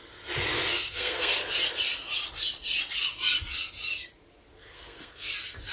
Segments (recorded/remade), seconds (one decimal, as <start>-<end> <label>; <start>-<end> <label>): 0.0-0.7 recorded; 0.7-1.5 remade; 1.5-4.5 recorded; 4.5-5.3 remade; 5.3-5.7 recorded